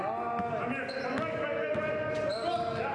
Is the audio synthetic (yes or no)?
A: no